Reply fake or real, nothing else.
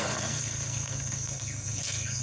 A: fake